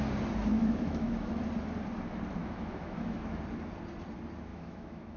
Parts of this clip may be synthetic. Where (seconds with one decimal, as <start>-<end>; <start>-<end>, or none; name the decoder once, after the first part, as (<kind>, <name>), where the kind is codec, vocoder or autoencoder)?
0.5-1.3 (autoencoder, DAC-VAE); 2.4-3.4; 4.5-5.2